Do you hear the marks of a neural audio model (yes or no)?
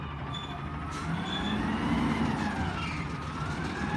no